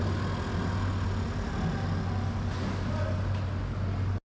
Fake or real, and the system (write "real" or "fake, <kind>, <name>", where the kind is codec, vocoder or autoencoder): real